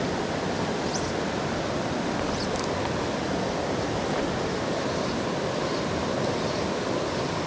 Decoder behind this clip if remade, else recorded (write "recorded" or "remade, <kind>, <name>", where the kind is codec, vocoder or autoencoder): recorded